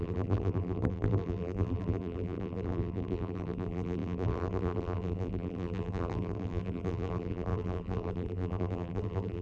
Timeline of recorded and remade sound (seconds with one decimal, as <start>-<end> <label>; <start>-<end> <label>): 0.0-9.4 remade

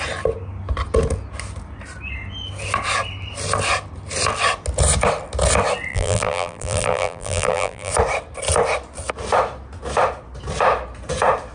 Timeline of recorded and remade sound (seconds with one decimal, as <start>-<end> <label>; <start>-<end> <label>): 0.0-5.9 recorded; 5.9-7.9 remade; 7.9-11.5 recorded

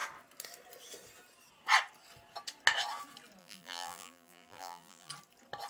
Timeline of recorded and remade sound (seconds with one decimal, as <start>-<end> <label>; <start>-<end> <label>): 0.0-3.4 recorded; 3.4-5.1 remade; 5.1-5.7 recorded

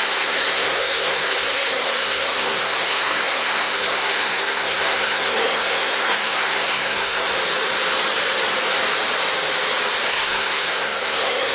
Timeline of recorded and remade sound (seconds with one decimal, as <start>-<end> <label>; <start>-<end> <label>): 0.0-7.4 remade; 7.4-10.1 recorded; 10.1-11.5 remade

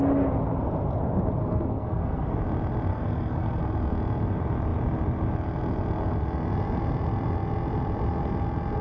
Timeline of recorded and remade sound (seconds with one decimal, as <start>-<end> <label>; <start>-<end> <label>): 0.0-1.4 recorded; 1.4-2.3 remade; 2.3-2.9 recorded; 2.9-3.6 remade; 3.6-8.8 recorded